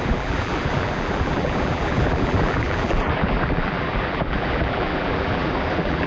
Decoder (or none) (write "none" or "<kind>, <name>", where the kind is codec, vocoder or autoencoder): vocoder, BigVGAN v2